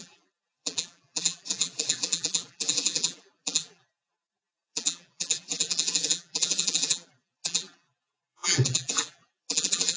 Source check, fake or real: fake